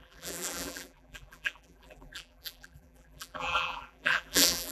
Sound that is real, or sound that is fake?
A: fake